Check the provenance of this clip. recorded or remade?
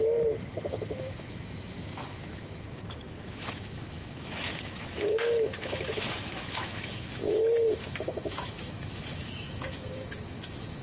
remade